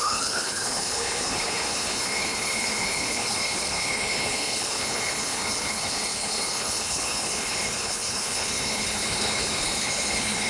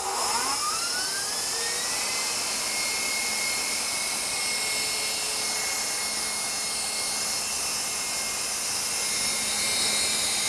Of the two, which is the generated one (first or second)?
first